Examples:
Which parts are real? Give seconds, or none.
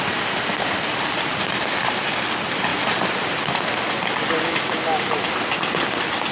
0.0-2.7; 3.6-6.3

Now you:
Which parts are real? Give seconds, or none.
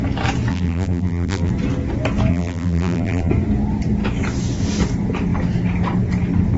0.0-0.5; 1.5-2.3; 3.3-6.6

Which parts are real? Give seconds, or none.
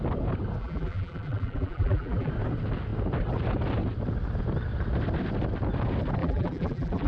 0.0-0.6; 2.3-6.2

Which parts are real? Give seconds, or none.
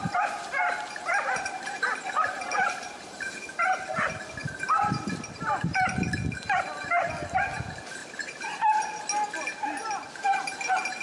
3.4-4.4; 5.4-8.0; 8.8-11.0